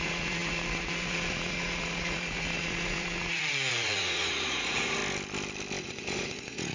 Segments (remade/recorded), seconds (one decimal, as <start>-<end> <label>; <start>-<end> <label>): 0.0-5.0 remade; 5.0-5.8 recorded; 5.8-6.7 remade